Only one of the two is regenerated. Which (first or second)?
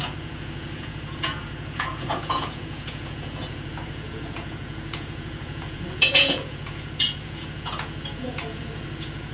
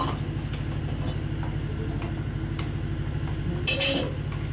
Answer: first